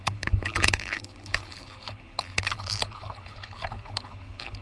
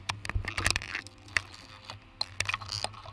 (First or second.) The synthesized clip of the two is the first